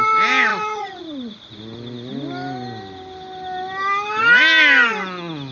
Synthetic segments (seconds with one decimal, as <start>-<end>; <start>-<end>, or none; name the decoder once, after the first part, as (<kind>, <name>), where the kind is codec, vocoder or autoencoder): 0.5-1.6 (vocoder, Vocos)